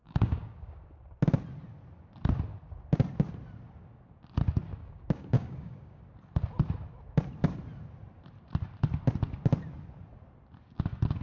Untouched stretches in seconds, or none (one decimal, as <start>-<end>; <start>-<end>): 0.8-4.7; 6.0-11.2